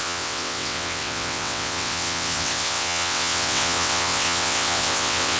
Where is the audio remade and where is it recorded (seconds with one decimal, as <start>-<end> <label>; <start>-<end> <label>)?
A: 0.0-5.4 remade